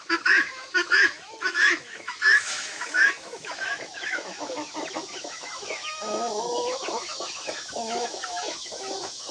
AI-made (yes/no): yes